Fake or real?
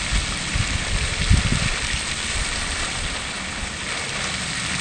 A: real